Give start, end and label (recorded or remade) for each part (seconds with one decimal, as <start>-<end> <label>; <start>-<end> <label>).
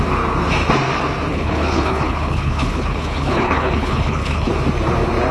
0.0-1.3 recorded; 1.3-4.5 remade; 4.5-5.3 recorded